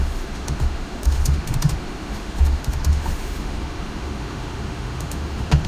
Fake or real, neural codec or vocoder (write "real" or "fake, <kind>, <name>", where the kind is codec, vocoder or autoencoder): fake, autoencoder, DAC-VAE